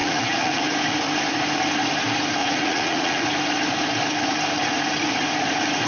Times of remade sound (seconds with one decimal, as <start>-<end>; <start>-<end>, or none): 0.0-0.6; 2.4-3.2